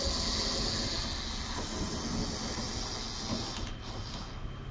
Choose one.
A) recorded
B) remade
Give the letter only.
A